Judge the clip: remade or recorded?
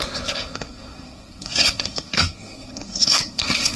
remade